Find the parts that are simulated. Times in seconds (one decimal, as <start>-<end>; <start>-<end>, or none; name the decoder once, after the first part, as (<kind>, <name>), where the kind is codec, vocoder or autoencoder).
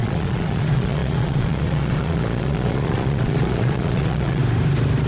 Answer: 0.0-4.4 (vocoder, Vocos)